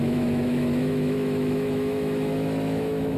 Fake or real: fake